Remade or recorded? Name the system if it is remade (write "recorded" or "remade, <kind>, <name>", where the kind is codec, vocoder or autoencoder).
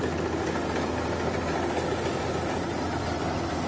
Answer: recorded